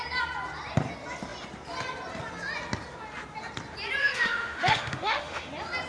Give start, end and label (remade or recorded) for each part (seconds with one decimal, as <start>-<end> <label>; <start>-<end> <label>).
0.0-4.0 recorded; 4.0-5.5 remade; 5.5-5.9 recorded